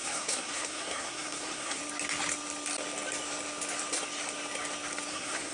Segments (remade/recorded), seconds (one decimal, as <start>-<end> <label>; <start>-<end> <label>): 0.0-1.8 remade; 1.8-5.1 recorded; 5.1-5.5 remade